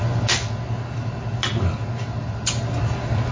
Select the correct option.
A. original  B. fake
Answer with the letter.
A